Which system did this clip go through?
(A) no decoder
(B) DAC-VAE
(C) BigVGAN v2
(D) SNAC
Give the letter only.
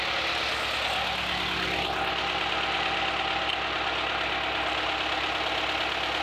A